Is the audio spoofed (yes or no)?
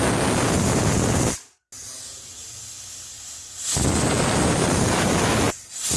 no